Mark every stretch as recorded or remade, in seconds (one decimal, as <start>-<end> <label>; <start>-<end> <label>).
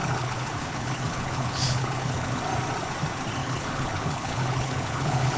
0.0-2.4 remade; 2.4-3.4 recorded; 3.4-5.4 remade